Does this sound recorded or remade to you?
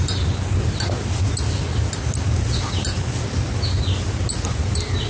recorded